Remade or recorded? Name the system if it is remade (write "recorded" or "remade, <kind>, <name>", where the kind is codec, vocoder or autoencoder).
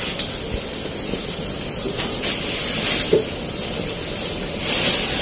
recorded